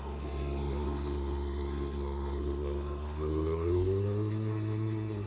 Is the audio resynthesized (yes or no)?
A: yes